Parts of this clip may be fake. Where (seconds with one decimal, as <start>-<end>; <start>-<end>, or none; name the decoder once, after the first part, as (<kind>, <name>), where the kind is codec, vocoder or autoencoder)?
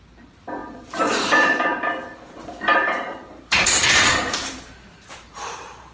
0.0-5.9 (vocoder, BigVGAN v2)